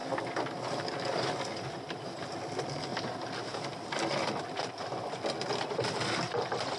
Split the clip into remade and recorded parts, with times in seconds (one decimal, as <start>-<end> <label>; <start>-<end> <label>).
0.0-1.5 remade; 1.5-2.9 recorded; 2.9-6.8 remade